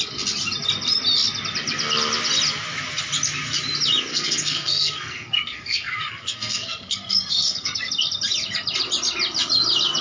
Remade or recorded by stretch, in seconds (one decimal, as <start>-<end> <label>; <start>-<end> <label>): 0.0-4.1 recorded; 4.1-7.9 remade; 7.9-10.0 recorded

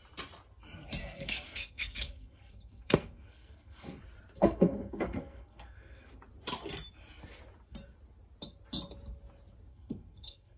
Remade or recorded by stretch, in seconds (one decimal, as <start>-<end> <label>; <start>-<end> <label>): 0.0-1.0 recorded; 1.0-4.0 remade; 4.0-4.4 recorded; 4.4-6.1 remade; 6.1-9.7 recorded; 9.7-10.6 remade

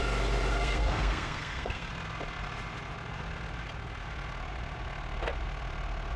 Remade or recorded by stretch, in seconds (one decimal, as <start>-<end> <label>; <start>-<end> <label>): 0.0-0.5 recorded; 0.5-1.9 remade; 1.9-6.2 recorded

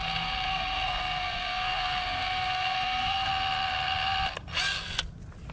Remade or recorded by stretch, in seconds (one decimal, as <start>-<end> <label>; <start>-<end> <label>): 0.0-3.3 remade; 3.3-5.5 recorded

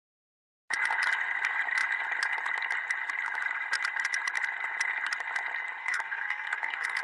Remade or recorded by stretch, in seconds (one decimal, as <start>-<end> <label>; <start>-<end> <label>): 0.0-5.8 recorded; 5.8-7.0 remade

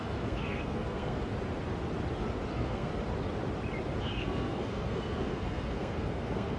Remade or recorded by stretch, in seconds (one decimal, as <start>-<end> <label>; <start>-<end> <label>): 0.0-1.3 remade; 1.3-2.5 recorded; 2.5-2.9 remade; 2.9-4.0 recorded; 4.0-6.6 remade

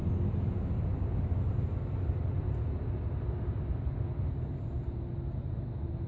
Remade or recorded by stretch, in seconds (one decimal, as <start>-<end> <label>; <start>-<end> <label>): 0.0-6.1 recorded

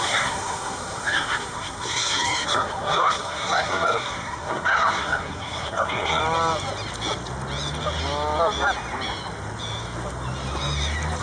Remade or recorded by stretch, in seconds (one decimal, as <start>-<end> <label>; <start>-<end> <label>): 0.0-6.2 remade; 6.2-11.2 recorded